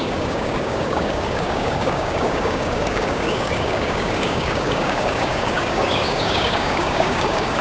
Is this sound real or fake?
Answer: fake